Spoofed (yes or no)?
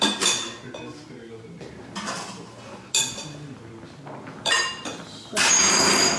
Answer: no